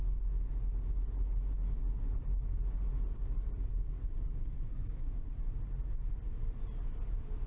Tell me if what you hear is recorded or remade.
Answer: recorded